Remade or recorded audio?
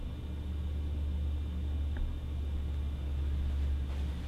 recorded